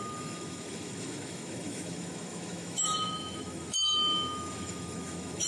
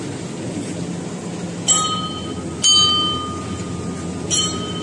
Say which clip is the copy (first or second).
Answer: first